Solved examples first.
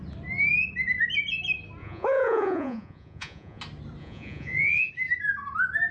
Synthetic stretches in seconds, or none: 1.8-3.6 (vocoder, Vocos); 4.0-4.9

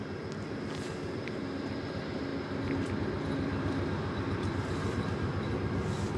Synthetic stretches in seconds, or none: none